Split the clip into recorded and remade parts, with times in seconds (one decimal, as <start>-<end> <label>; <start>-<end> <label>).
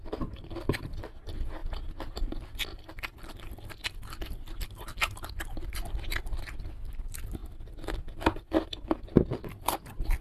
0.0-10.2 recorded